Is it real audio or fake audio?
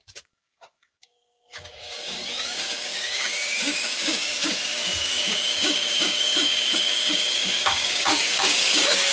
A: fake